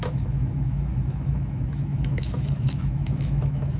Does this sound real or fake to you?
fake